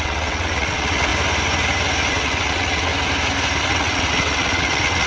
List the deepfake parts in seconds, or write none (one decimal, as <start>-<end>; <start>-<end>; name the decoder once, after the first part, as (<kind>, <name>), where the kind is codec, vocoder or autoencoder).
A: 0.0-1.1 (vocoder, WaveNeXt); 2.1-2.9; 3.6-5.1